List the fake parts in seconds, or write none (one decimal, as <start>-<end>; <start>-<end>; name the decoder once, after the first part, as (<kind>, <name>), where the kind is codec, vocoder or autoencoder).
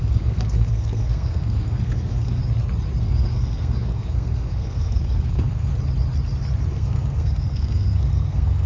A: 0.0-2.4 (codec, SNAC); 3.0-5.7; 6.7-8.7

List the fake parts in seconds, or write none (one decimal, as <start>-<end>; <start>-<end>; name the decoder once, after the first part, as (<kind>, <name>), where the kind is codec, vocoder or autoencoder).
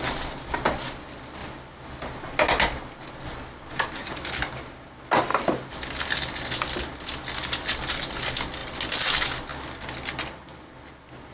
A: none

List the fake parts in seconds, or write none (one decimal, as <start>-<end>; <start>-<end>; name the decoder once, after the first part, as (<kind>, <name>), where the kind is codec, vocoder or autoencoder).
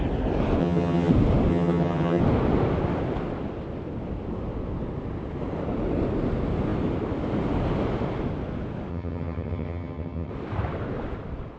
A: 0.6-1.1 (vocoder, HiFi-GAN); 1.5-2.2; 8.9-10.3